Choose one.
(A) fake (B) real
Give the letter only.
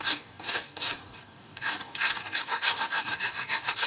A